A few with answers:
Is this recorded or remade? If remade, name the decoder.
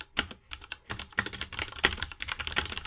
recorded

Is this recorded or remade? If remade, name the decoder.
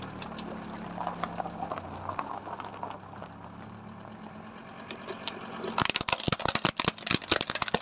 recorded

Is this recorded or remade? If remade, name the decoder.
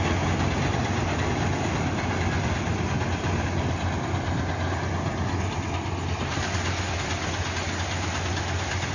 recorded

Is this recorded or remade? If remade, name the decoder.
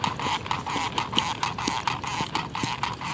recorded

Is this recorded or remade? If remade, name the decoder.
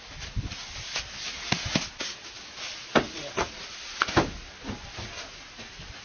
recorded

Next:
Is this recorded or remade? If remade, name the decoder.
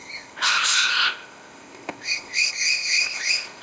remade, codec, ZipCodec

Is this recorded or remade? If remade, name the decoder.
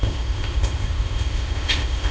remade, codec, ZipCodec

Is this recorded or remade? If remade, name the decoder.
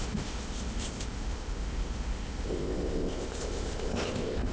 remade, codec, ZipCodec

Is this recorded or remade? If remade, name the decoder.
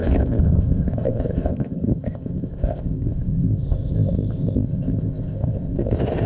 remade, codec, ZipCodec